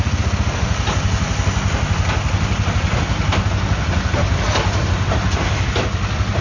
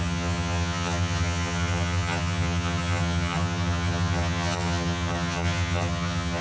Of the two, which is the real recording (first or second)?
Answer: first